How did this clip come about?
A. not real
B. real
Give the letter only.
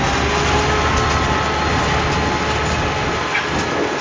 B